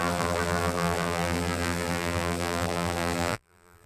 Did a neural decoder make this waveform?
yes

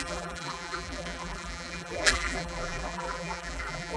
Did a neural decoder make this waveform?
yes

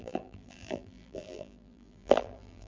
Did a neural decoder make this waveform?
yes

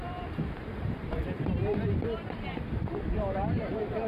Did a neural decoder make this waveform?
yes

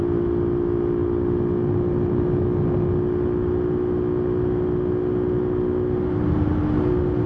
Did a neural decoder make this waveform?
no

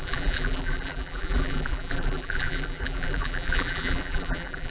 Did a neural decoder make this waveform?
yes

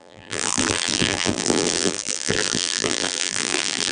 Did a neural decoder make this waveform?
yes